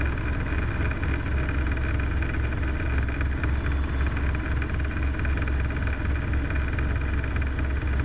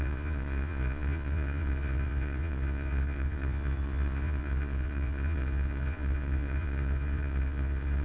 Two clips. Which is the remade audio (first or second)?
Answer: second